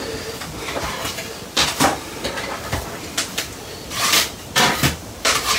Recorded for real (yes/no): no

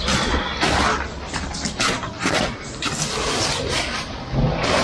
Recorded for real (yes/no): yes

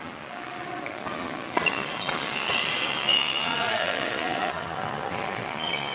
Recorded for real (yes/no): no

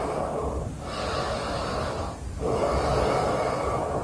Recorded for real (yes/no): yes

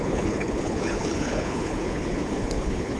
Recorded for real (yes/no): no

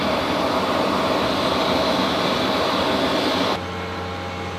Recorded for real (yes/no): yes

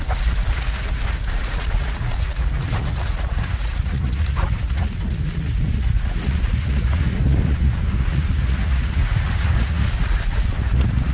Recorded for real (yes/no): no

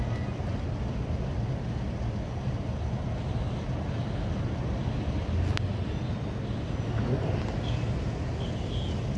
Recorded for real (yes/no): yes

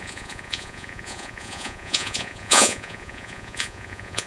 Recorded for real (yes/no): no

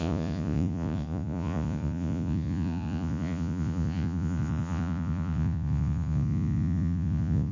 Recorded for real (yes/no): no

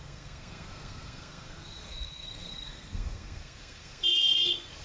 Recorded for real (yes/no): no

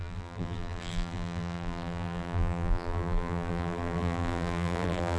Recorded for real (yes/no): no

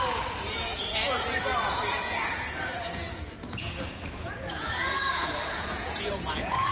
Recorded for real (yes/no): no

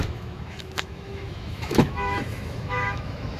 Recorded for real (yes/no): no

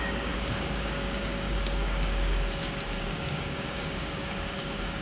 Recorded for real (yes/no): no